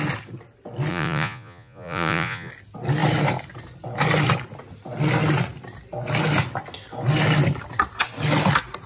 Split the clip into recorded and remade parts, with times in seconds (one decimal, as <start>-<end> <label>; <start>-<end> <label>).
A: 0.0-0.9 recorded; 0.9-2.5 remade; 2.5-8.9 recorded